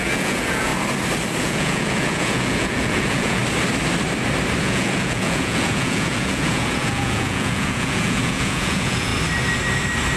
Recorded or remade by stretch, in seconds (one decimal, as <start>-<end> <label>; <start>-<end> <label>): 0.0-0.7 remade; 0.7-1.4 recorded; 1.4-3.4 remade; 3.4-4.6 recorded; 4.6-9.1 remade; 9.1-10.2 recorded